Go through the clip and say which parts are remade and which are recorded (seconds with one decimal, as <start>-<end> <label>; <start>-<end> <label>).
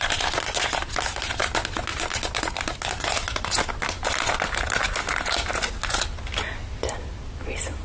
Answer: 0.0-7.8 recorded